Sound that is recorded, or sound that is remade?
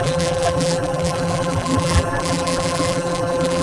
remade